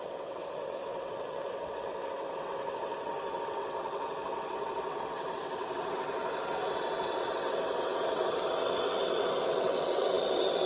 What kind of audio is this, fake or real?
fake